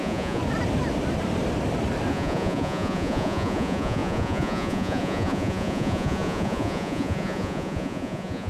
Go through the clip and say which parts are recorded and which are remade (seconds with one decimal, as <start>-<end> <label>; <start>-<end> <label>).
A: 0.0-0.4 remade; 0.4-2.1 recorded; 2.1-8.5 remade